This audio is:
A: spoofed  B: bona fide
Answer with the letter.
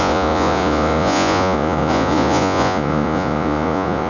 A